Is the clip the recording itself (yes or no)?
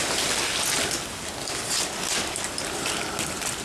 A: yes